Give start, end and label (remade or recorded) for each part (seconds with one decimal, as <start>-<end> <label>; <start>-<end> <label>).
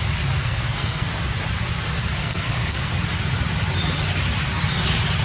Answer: 0.0-0.4 recorded; 0.4-1.1 remade; 1.1-2.2 recorded; 2.2-2.9 remade; 2.9-5.2 recorded